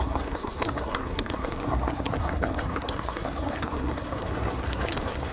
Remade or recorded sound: remade